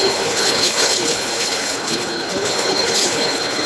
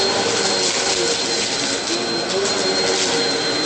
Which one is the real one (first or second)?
second